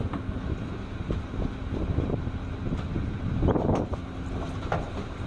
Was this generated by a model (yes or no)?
no